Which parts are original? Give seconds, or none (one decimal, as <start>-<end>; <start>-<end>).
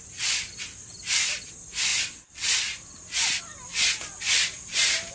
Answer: 0.0-5.1